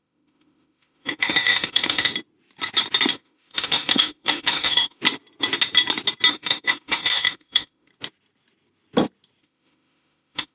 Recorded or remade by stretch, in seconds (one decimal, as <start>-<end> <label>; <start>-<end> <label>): 0.0-2.1 remade; 2.1-3.1 recorded; 3.1-5.0 remade; 5.0-6.3 recorded; 6.3-7.9 remade; 7.9-9.4 recorded; 9.4-10.5 remade